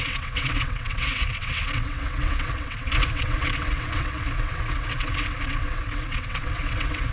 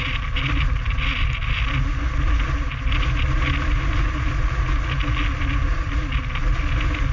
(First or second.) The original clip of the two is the second